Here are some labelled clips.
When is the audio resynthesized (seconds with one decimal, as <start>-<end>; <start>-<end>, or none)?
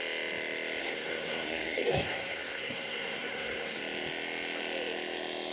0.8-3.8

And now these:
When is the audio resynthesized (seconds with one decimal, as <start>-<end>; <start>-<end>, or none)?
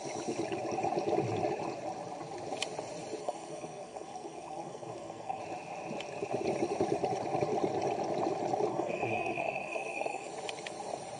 3.2-5.4; 8.7-10.3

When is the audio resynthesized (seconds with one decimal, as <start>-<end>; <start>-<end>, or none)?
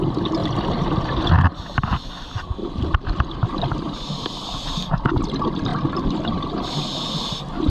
0.4-1.3; 2.6-5.2; 5.7-6.7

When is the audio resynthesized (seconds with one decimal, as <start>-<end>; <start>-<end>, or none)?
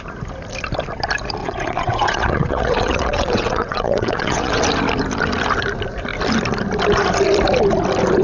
1.4-4.6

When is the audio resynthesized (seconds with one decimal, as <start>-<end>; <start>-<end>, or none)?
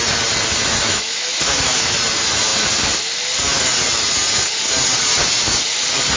0.9-1.9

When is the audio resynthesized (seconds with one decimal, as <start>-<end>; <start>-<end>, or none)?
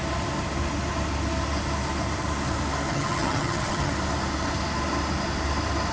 2.9-3.9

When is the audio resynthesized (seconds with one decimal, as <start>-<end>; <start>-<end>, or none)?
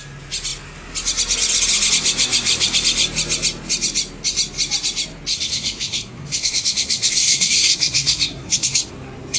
5.3-8.9